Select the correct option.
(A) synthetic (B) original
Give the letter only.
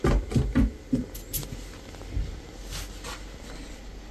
B